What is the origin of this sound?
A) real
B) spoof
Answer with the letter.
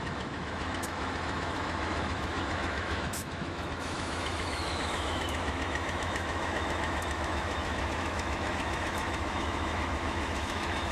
B